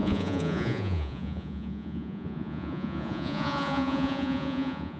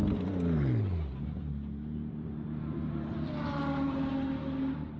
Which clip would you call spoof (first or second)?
first